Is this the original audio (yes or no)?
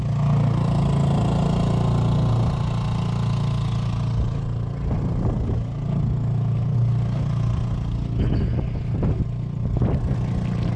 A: yes